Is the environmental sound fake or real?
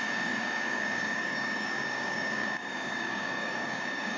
fake